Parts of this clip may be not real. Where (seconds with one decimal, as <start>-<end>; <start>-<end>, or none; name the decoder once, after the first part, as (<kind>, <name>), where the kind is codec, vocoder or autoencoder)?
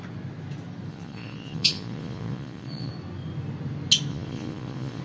0.9-2.9 (vocoder, Vocos); 4.1-5.0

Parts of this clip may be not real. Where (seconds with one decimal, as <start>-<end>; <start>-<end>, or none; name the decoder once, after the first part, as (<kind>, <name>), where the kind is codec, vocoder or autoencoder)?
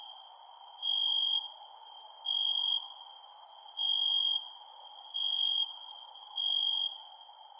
none